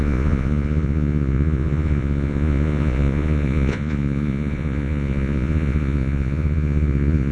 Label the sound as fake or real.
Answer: fake